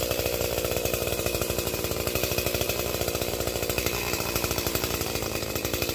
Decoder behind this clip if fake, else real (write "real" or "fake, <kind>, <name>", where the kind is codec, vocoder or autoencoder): fake, vocoder, BigVGAN v2